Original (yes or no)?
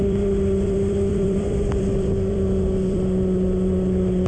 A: no